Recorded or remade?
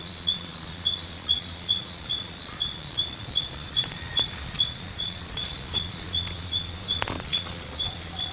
remade